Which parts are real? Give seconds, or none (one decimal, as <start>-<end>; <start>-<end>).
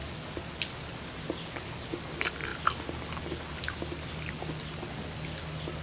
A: 0.0-5.8